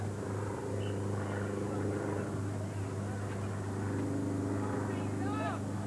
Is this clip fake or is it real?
real